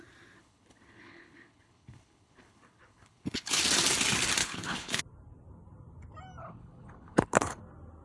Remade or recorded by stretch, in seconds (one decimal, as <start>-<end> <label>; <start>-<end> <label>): 0.0-0.4 recorded; 0.4-3.6 remade; 3.6-4.4 recorded; 4.4-5.0 remade; 5.0-6.4 recorded; 6.4-7.6 remade; 7.6-8.0 recorded